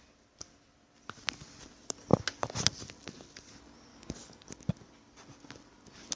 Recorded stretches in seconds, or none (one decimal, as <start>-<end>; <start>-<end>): 0.0-3.9; 4.5-6.2